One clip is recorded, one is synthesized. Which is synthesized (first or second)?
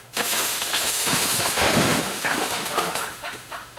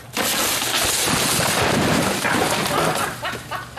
first